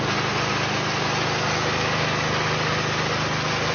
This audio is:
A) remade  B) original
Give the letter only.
B